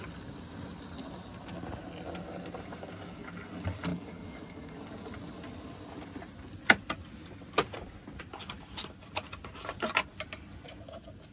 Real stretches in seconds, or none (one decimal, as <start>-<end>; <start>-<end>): 0.0-3.9; 4.8-11.3